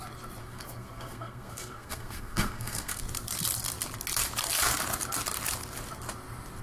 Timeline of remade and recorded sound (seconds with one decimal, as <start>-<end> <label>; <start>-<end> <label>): 0.0-0.4 recorded; 0.4-3.0 remade; 3.0-6.6 recorded